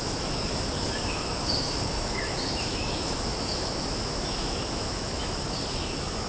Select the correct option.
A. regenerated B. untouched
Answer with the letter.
A